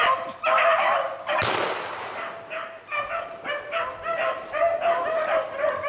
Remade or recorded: recorded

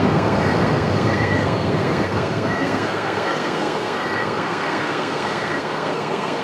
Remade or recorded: remade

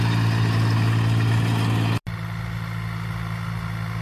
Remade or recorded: recorded